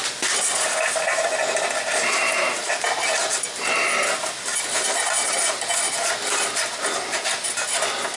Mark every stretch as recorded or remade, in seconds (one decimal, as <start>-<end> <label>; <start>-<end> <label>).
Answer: 0.0-2.6 recorded; 2.6-3.5 remade; 3.5-8.2 recorded